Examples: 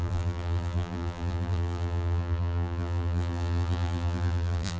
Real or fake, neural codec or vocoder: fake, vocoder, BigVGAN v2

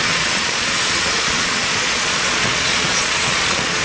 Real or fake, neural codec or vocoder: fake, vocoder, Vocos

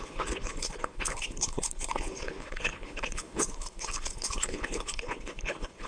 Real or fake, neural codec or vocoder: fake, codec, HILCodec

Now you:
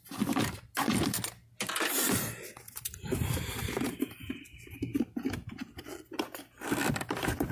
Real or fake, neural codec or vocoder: real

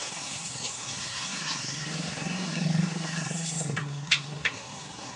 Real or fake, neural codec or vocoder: fake, codec, SNAC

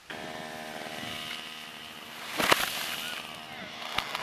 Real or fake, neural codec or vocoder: real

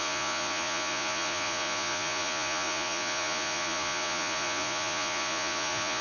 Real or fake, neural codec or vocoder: fake, vocoder, Vocos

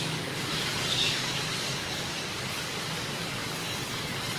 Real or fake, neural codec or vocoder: fake, codec, DAC